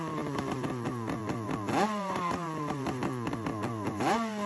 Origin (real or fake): fake